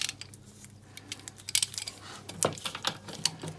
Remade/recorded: recorded